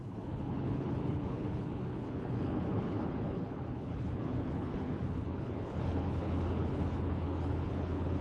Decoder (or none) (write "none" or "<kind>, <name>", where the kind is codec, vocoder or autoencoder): codec, HILCodec